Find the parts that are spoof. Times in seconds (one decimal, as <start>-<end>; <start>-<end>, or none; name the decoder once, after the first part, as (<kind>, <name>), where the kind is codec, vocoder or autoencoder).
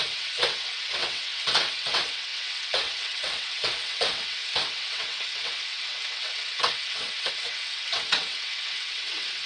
0.0-9.5 (vocoder, WaveNeXt)